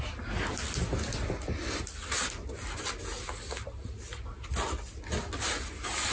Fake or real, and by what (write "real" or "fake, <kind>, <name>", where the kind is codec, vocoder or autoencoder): real